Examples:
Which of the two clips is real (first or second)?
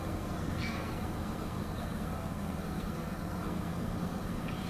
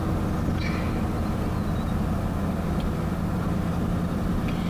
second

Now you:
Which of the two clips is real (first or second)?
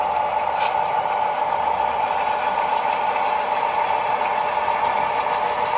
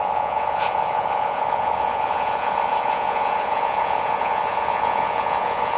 first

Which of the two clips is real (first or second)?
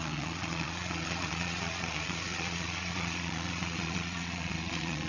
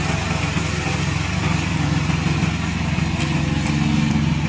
second